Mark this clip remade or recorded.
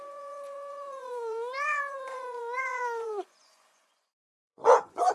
remade